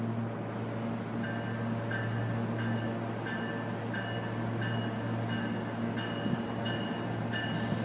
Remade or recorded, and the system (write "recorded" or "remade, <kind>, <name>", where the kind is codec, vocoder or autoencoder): recorded